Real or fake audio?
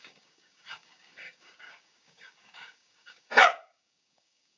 fake